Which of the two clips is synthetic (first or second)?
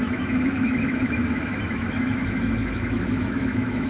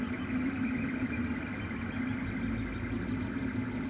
first